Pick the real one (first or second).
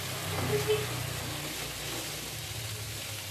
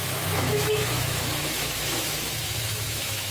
first